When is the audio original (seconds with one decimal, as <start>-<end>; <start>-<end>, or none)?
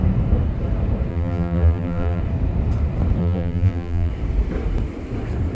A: 0.0-1.1; 2.2-3.2; 4.1-5.5